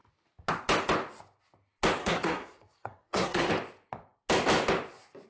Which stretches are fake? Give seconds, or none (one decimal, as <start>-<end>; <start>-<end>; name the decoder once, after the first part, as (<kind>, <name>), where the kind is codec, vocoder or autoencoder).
2.0-3.5 (codec, SNAC)